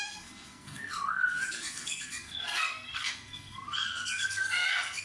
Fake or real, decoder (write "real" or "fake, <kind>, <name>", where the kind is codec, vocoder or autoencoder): fake, codec, SNAC